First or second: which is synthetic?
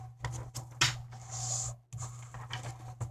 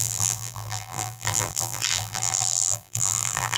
second